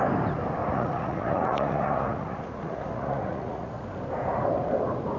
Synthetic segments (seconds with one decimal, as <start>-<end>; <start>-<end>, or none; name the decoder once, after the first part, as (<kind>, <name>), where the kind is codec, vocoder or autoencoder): 0.6-3.7 (vocoder, Vocos)